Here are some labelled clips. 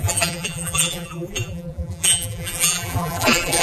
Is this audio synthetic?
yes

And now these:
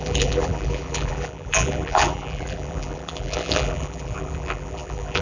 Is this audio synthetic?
yes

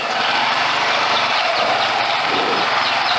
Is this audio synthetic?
no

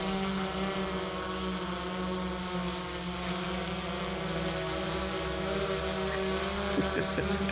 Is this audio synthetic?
no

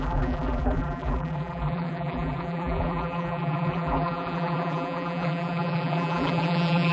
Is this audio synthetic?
yes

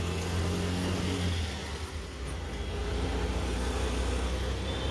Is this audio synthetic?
no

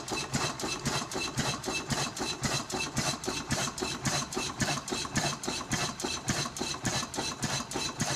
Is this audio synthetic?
yes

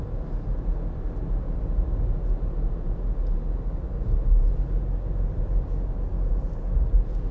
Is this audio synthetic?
no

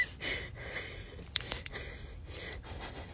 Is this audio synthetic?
yes